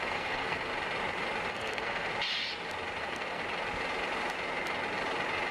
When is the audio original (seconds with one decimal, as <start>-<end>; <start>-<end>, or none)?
0.7-1.5; 2.1-3.0; 3.4-5.5